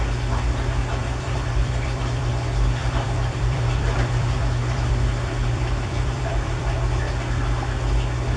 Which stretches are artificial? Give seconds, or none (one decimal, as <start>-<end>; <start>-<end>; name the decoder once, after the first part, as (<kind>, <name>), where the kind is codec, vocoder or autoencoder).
1.0-2.3 (vocoder, BigVGAN v2); 2.8-6.7

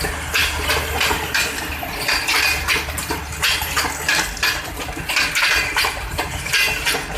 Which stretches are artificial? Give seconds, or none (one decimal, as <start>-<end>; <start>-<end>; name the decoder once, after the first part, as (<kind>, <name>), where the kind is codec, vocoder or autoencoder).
none